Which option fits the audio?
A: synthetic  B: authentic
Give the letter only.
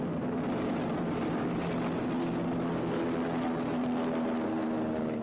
B